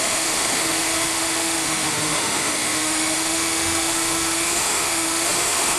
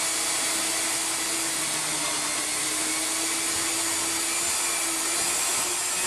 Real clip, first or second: second